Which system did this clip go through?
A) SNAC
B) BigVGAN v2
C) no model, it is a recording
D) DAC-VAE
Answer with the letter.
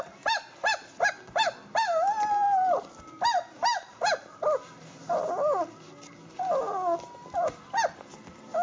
C